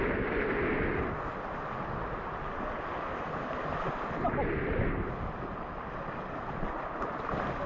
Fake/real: real